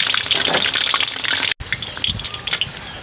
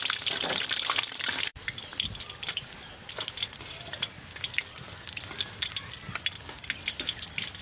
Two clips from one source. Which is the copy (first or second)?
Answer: second